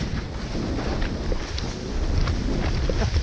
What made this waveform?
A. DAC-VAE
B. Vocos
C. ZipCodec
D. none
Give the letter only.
D